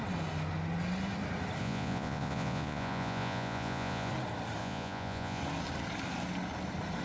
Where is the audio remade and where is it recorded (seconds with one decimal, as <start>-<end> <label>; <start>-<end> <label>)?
0.0-1.6 recorded; 1.6-4.1 remade; 4.1-4.6 recorded; 4.6-5.4 remade; 5.4-7.0 recorded